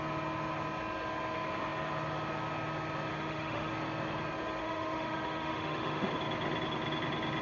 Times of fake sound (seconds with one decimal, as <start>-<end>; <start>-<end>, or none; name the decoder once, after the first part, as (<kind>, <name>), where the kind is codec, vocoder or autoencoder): 3.1-3.7 (autoencoder, DAC-VAE); 4.6-6.1